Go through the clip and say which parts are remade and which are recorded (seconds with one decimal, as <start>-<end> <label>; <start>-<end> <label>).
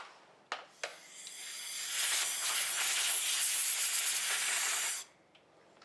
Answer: 0.0-3.6 recorded; 3.6-4.6 remade; 4.6-5.8 recorded